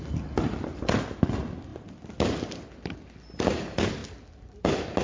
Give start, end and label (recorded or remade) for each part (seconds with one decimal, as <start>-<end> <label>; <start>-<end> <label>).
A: 0.0-5.0 recorded